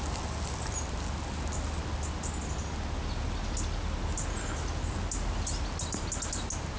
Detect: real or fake real